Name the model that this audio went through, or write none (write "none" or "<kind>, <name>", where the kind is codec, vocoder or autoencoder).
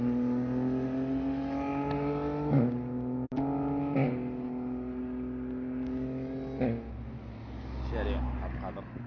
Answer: none